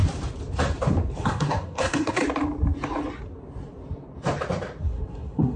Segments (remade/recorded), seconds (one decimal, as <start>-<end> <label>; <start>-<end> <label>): 0.0-1.2 recorded; 1.2-2.2 remade; 2.2-4.8 recorded; 4.8-5.6 remade